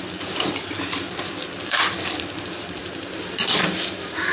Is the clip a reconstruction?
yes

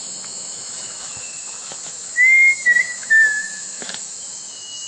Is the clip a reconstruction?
yes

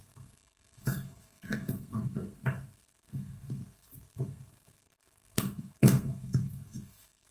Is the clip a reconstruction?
yes